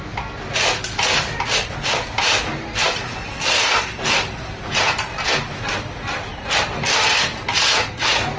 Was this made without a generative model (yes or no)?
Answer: yes